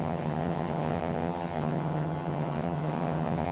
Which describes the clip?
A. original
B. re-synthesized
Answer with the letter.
B